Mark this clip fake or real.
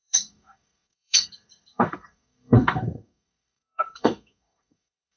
fake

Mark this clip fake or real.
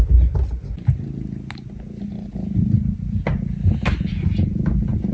real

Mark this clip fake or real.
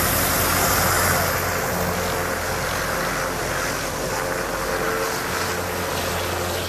real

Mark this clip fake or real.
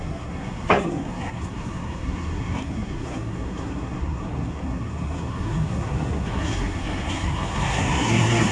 fake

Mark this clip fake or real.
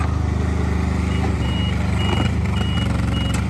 real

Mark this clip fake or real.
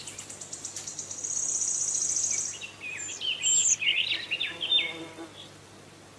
real